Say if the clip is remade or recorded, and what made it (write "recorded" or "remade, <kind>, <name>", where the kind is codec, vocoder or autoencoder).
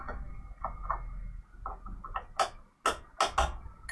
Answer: recorded